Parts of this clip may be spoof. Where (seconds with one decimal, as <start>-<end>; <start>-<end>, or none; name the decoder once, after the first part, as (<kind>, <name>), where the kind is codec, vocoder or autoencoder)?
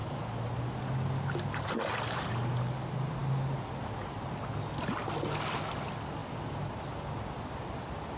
none